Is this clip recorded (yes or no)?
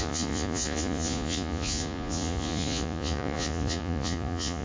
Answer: no